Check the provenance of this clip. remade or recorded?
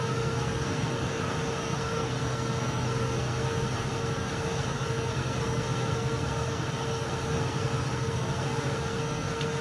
remade